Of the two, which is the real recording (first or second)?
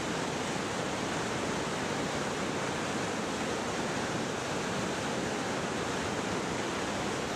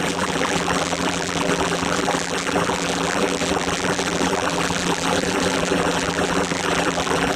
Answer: first